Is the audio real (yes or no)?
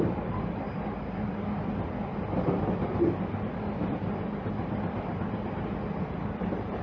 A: yes